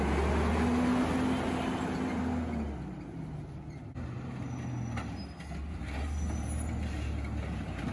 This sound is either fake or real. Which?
real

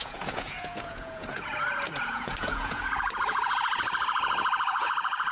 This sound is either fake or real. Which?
fake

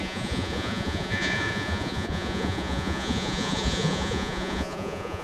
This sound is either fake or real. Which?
fake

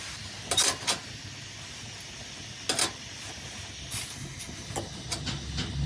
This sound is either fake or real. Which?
real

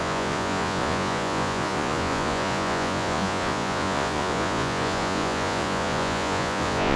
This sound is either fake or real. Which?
fake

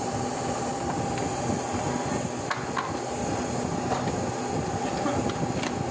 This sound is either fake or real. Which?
real